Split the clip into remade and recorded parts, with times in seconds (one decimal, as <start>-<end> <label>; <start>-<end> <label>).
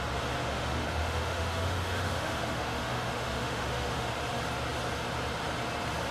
0.0-0.4 recorded; 0.4-4.1 remade; 4.1-6.1 recorded